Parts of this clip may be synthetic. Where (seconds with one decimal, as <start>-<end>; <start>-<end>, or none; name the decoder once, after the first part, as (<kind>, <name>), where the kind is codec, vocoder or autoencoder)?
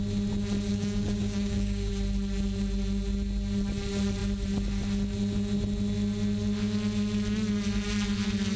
0.7-1.9 (codec, DAC)